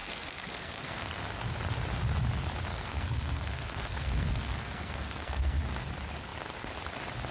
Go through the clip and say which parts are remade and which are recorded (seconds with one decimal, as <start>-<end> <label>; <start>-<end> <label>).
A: 0.0-1.2 remade; 1.2-2.7 recorded; 2.7-5.6 remade; 5.6-7.3 recorded